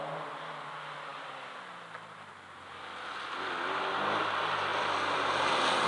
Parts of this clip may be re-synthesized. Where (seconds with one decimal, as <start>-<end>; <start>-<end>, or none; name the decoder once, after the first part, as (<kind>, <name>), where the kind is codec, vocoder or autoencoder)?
none